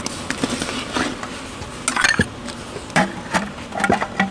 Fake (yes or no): no